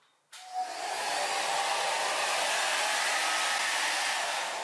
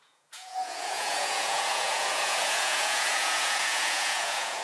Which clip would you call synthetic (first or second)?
second